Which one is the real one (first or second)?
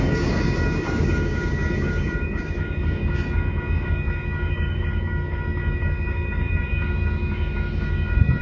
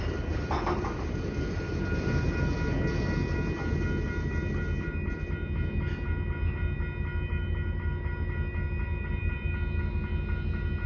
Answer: second